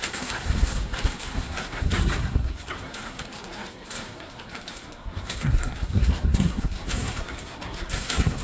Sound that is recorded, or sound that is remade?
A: remade